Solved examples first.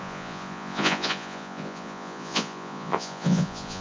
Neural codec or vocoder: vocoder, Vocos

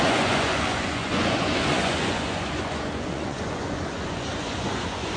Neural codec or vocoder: vocoder, Vocos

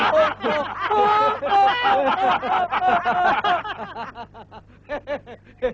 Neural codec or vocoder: none